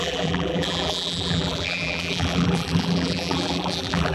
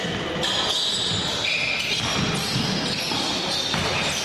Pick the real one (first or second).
second